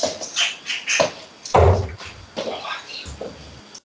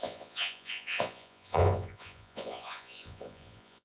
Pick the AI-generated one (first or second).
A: second